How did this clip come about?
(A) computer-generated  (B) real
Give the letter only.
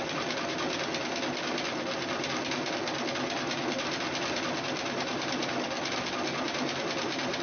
B